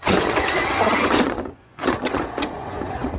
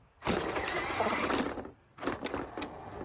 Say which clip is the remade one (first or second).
first